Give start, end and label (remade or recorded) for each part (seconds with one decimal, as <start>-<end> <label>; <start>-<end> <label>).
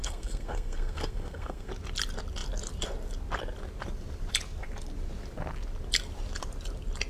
0.0-1.7 remade; 1.7-7.1 recorded